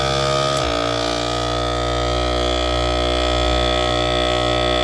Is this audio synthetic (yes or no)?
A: no